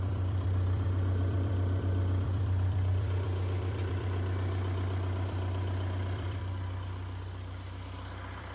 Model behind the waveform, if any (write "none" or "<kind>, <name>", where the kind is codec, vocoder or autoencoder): vocoder, BigVGAN v2